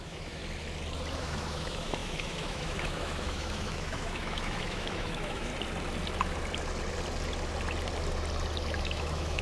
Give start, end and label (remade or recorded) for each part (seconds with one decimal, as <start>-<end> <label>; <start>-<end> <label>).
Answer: 0.0-0.4 remade; 0.4-1.2 recorded; 1.2-5.5 remade; 5.5-8.8 recorded; 8.8-9.4 remade